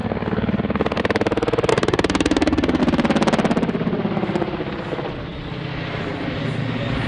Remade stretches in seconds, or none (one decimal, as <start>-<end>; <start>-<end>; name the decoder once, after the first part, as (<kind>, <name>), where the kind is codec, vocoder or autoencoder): 0.0-1.0 (codec, SNAC); 1.7-2.8

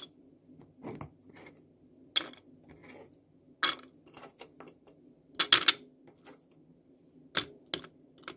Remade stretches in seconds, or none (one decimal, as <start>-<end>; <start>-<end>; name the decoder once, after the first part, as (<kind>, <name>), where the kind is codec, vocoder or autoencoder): none

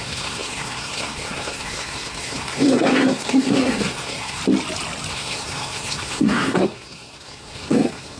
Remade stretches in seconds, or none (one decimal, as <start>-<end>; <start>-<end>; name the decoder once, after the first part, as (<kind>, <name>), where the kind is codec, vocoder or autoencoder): 0.0-4.4 (codec, SNAC); 5.1-8.2

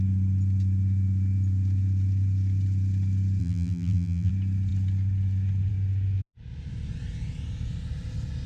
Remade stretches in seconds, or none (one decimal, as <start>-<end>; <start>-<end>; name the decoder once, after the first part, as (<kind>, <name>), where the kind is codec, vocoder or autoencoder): 3.4-4.3 (vocoder, BigVGAN v2)